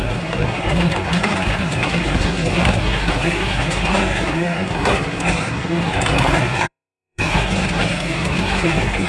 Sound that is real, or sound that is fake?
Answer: fake